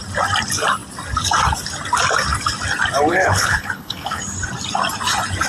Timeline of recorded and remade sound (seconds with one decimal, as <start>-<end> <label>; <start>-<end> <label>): 0.0-3.1 recorded; 3.1-4.2 remade; 4.2-5.5 recorded